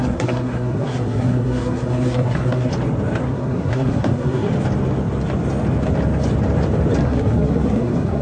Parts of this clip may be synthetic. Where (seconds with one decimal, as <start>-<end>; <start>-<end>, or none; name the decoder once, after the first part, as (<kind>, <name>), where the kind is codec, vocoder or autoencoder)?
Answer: 0.0-2.7 (codec, SNAC); 3.2-4.5; 7.0-8.2